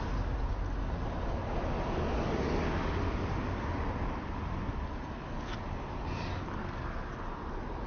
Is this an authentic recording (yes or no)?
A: yes